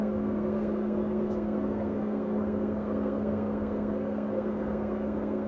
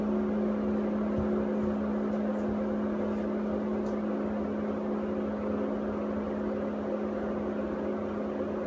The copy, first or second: first